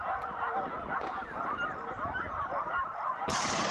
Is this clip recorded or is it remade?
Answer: recorded